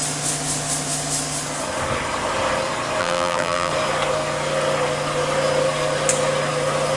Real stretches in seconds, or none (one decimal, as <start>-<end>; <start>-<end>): 0.0-3.0; 3.7-7.0